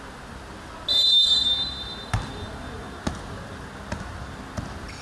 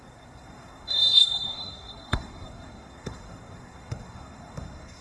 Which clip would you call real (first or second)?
first